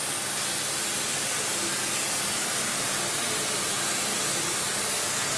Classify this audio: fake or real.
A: real